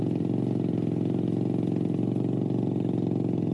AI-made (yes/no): no